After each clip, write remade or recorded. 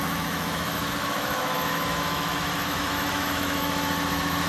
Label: remade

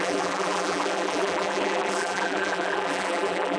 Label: remade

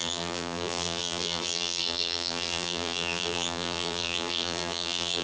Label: remade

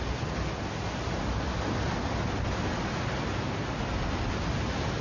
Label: recorded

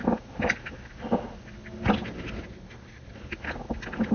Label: recorded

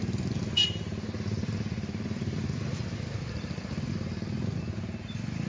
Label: remade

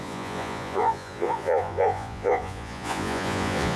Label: remade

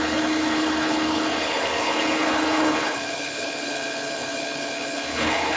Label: remade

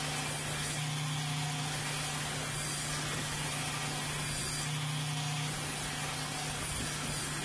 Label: recorded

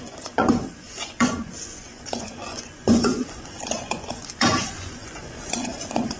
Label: remade